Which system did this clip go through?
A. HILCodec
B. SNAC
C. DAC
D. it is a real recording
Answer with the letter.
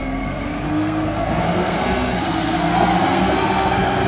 B